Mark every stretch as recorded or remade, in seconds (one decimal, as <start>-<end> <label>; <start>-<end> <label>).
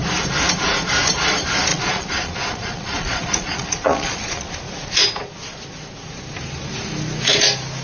0.0-1.7 recorded; 1.7-4.5 remade; 4.5-7.8 recorded